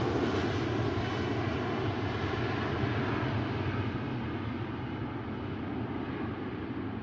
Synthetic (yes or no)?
no